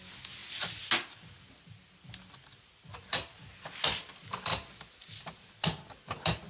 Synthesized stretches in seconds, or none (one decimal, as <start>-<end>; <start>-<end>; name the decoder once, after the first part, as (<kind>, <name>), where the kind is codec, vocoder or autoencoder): none